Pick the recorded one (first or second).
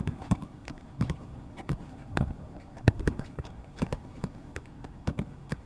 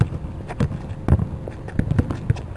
second